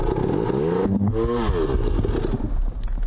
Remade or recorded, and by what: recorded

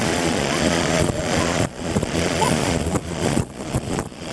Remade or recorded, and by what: remade, vocoder, Vocos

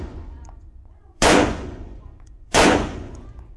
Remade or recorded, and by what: remade, vocoder, Vocos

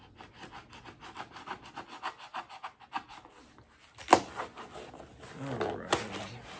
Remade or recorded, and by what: recorded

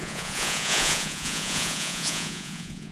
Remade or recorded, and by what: remade, vocoder, Vocos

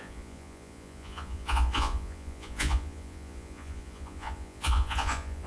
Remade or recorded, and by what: remade, vocoder, Vocos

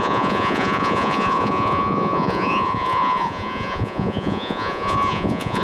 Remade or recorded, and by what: remade, vocoder, Vocos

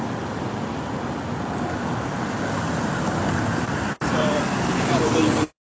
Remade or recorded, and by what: recorded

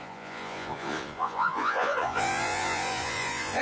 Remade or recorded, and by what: remade, vocoder, Vocos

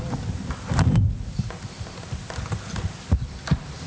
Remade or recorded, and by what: recorded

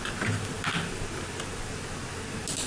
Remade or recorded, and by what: recorded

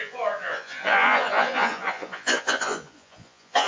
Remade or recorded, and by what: remade, vocoder, Vocos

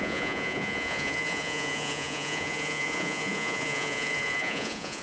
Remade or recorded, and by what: remade, vocoder, Vocos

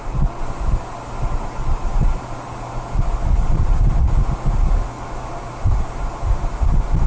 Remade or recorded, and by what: recorded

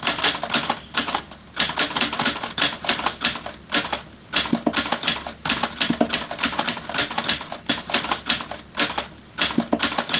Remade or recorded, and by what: recorded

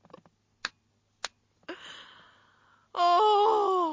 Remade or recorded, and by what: recorded